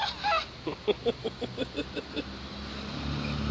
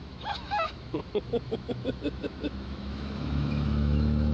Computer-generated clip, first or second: second